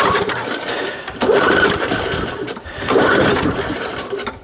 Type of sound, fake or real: fake